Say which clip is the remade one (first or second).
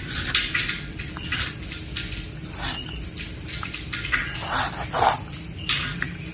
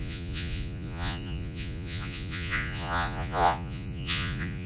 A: second